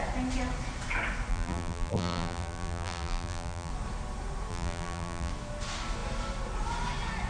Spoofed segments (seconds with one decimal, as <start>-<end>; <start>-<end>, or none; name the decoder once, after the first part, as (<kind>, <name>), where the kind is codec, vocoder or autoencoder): 1.3-3.7 (vocoder, BigVGAN v2); 4.5-5.3